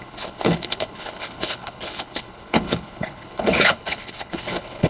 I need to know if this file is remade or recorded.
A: remade